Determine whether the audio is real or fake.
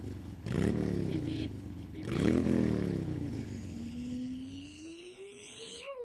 fake